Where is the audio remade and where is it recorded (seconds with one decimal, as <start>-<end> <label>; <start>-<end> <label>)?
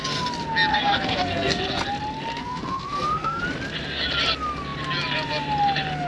0.0-0.7 recorded; 0.7-1.6 remade; 1.6-2.4 recorded; 2.4-3.4 remade; 3.4-6.1 recorded